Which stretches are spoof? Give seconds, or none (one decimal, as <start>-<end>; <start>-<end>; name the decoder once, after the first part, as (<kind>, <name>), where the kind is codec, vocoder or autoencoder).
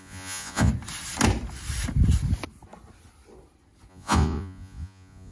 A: 0.0-0.7 (vocoder, Vocos); 3.9-5.3